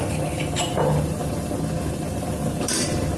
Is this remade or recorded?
remade